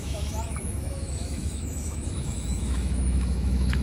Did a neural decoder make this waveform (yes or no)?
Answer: yes